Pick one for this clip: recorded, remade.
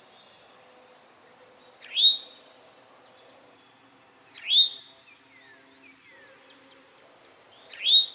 recorded